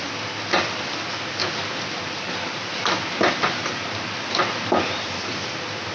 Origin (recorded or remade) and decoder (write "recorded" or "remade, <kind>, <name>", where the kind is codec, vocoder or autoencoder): recorded